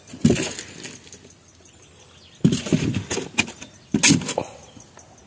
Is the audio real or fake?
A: real